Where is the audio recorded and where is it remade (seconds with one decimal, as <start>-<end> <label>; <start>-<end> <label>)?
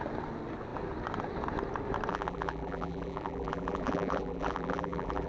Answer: 0.0-2.1 recorded; 2.1-5.3 remade